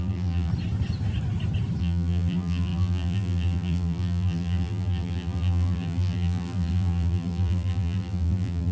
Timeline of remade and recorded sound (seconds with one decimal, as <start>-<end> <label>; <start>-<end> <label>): 0.0-0.5 remade; 0.5-1.8 recorded; 1.8-8.7 remade